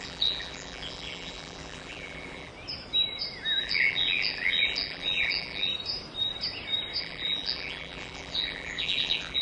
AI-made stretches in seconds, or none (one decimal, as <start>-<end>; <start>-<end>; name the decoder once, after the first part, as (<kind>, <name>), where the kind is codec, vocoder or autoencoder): 0.0-2.5 (vocoder, BigVGAN v2); 3.6-5.7; 7.0-9.4